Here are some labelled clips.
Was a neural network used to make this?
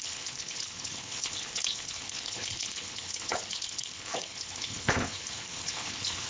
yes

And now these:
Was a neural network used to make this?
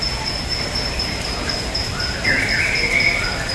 yes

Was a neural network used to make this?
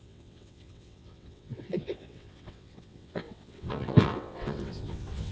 yes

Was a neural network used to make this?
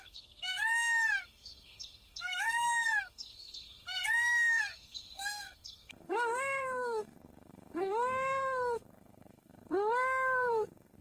yes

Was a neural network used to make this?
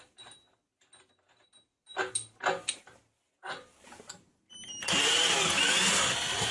no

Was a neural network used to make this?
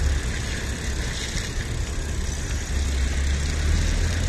no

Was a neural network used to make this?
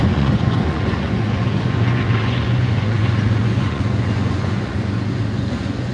yes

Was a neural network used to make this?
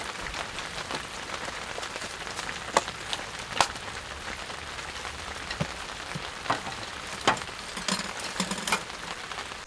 no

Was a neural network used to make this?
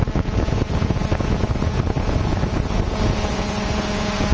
yes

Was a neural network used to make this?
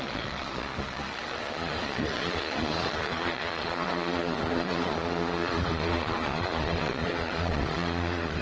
yes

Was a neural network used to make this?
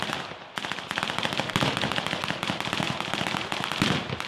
no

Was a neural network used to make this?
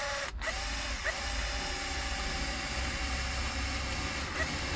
no